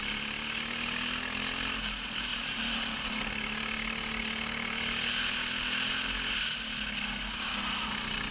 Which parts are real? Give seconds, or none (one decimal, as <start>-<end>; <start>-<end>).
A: 0.0-8.3